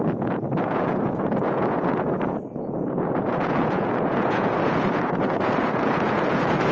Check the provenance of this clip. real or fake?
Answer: fake